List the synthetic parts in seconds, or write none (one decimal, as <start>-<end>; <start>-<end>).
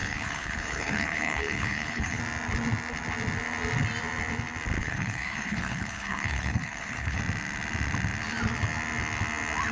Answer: 0.0-2.2; 4.8-7.2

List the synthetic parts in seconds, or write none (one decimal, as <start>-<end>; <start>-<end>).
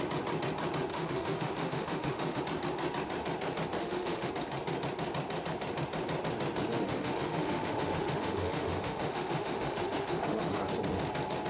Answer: 0.9-2.4; 3.8-4.3; 6.7-10.6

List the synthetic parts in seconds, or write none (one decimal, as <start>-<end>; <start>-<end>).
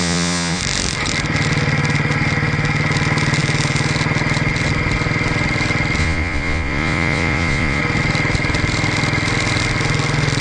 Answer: 0.0-0.6; 6.0-7.8